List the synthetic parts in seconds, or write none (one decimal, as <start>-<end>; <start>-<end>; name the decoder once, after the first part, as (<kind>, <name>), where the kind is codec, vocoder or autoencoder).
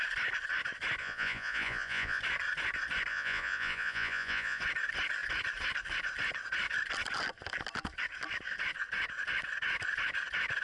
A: 1.0-2.2 (vocoder, Vocos); 3.1-4.6